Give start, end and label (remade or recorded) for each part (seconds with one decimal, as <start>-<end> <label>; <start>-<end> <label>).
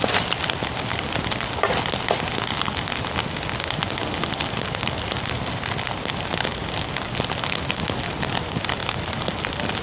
0.0-9.8 recorded